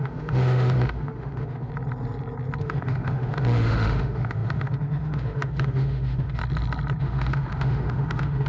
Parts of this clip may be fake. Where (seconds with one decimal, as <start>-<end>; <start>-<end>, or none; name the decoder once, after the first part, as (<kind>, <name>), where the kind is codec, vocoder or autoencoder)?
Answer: 0.0-1.7 (autoencoder, DAC-VAE); 2.6-6.4; 7.0-8.5